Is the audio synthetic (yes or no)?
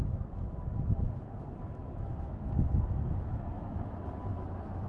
yes